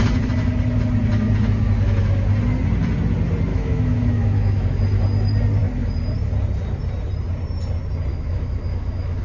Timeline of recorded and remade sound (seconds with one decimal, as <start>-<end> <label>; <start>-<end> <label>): 0.0-3.5 recorded; 3.5-4.8 remade; 4.8-8.1 recorded; 8.1-9.2 remade